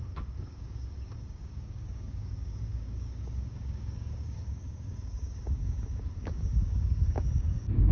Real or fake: fake